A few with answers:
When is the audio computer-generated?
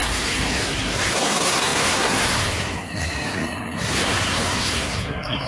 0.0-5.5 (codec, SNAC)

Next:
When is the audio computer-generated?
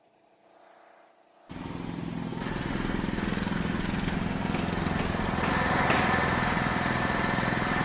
none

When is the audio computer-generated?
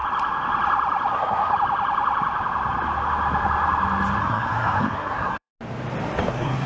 1.1-1.5 (codec, SNAC); 4.2-5.5; 6.3-6.7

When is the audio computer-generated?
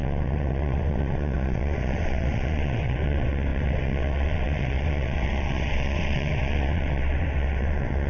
0.0-8.1 (vocoder, WaveNeXt)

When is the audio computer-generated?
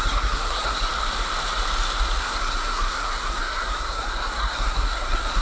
0.0-0.9 (codec, SNAC); 2.2-5.4